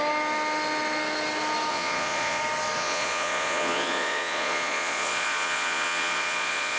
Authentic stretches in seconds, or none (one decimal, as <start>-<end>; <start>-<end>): 0.0-1.7; 2.4-2.8